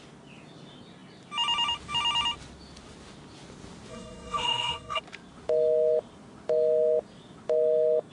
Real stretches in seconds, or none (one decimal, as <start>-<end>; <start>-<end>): 0.0-3.9; 5.0-8.1